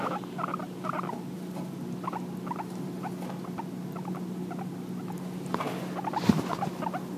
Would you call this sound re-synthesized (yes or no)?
no